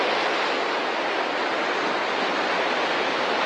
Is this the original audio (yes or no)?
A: yes